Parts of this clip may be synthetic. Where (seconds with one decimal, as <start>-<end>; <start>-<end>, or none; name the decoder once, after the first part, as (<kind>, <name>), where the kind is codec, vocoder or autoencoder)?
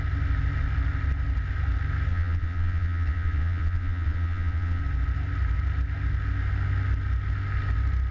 2.1-4.8 (vocoder, Vocos)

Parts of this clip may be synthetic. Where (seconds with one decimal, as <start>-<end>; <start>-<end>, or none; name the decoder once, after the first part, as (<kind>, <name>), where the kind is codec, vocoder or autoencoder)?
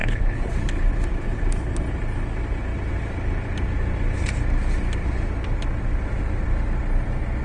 0.0-0.5 (codec, HILCodec)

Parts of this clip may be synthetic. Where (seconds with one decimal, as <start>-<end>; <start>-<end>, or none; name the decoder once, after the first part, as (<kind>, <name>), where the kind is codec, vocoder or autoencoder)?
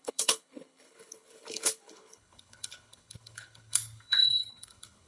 0.0-5.1 (codec, HILCodec)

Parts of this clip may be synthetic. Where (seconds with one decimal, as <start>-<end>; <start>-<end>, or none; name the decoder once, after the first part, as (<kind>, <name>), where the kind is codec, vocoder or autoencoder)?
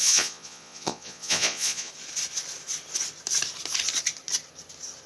0.0-1.9 (vocoder, Vocos)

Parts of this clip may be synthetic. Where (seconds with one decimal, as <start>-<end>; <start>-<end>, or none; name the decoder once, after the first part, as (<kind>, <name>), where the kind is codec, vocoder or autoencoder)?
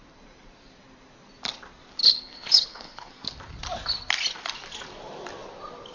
2.0-3.1 (codec, HILCodec)